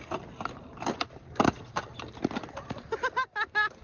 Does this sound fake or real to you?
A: real